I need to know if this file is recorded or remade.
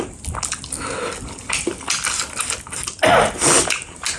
recorded